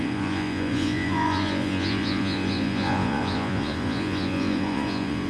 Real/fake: fake